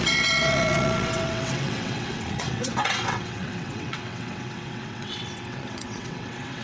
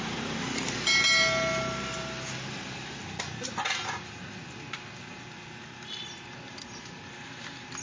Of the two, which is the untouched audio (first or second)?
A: second